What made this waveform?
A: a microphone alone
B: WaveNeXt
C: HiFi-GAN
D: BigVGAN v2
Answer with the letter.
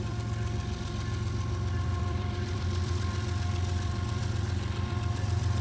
D